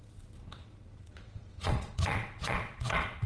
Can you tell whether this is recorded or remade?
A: remade